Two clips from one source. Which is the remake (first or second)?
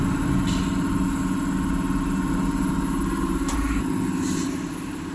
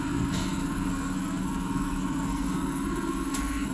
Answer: second